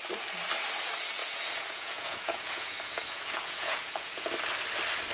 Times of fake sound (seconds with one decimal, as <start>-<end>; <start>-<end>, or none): 1.2-4.3